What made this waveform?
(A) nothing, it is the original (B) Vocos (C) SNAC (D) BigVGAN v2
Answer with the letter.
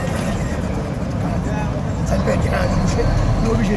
A